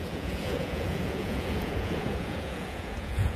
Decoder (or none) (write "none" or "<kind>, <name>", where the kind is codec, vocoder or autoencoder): vocoder, Vocos